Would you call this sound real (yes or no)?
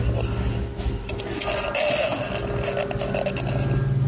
yes